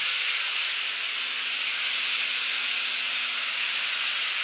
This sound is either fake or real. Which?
real